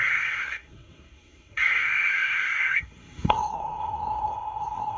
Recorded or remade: remade